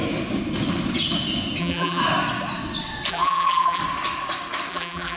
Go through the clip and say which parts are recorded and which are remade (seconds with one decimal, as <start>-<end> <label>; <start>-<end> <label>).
0.0-1.6 recorded; 1.6-2.0 remade; 2.0-3.1 recorded; 3.1-3.8 remade; 3.8-4.7 recorded; 4.7-5.2 remade